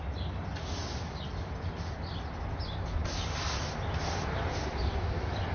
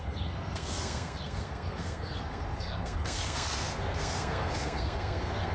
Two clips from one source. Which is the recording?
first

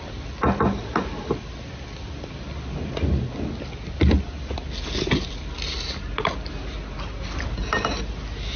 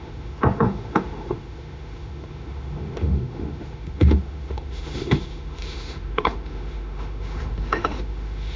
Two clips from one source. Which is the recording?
first